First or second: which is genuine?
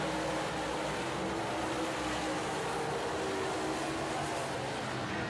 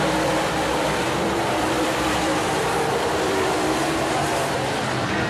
first